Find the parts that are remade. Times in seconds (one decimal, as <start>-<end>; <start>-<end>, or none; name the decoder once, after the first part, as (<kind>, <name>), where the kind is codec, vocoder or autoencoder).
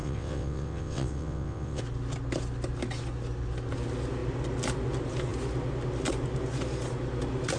0.0-1.8 (vocoder, WaveNeXt)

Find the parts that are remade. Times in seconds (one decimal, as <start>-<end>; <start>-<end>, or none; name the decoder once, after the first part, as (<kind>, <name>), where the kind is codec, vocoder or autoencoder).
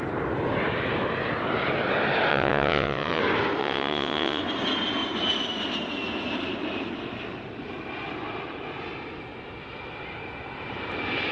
2.3-3.2 (vocoder, WaveNeXt); 3.6-4.4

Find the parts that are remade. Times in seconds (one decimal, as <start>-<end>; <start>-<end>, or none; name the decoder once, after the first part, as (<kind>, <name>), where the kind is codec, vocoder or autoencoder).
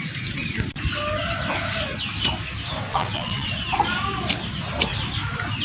2.9-3.5 (vocoder, WaveNeXt)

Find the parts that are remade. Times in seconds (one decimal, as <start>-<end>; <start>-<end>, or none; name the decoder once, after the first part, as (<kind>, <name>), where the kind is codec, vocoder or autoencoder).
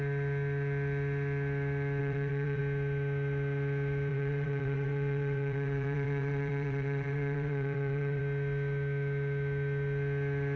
2.0-2.6 (vocoder, WaveNeXt); 4.1-8.2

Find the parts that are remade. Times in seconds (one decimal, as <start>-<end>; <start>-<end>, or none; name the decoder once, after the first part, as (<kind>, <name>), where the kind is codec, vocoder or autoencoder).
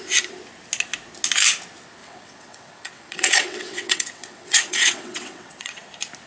2.0-5.8 (vocoder, WaveNeXt)